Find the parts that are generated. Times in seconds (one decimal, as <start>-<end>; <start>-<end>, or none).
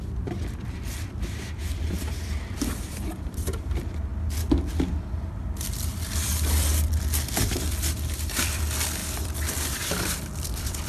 0.0-4.1; 4.9-10.9